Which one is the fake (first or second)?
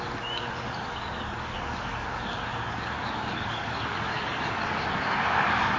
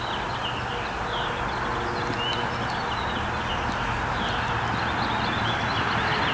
first